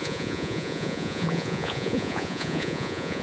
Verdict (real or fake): fake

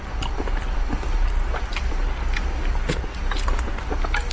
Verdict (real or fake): real